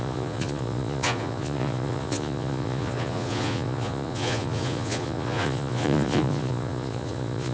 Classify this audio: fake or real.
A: fake